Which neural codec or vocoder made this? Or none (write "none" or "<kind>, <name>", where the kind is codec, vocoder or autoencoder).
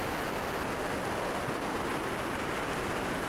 none